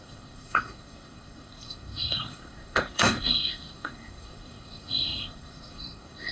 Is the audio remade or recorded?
remade